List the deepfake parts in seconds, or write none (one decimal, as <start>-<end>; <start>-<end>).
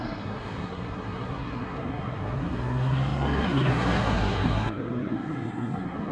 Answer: 0.0-6.1